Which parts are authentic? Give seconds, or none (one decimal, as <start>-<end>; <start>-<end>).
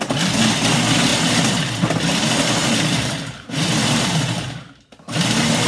0.0-2.6